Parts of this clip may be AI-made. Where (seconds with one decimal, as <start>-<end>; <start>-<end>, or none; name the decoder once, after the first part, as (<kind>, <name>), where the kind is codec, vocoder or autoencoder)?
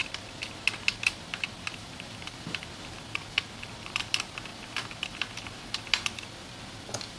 none